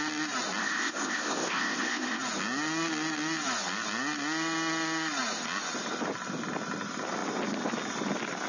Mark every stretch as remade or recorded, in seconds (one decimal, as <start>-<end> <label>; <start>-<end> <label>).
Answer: 0.0-0.6 recorded; 0.6-2.2 remade; 2.2-8.5 recorded